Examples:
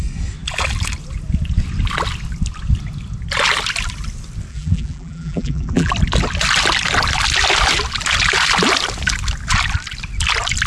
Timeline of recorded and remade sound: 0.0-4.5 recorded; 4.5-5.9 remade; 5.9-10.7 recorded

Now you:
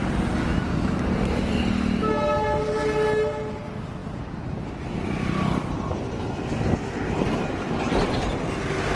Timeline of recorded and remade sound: 0.0-9.0 recorded